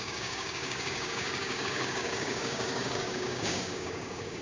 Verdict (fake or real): fake